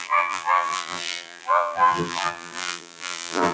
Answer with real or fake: fake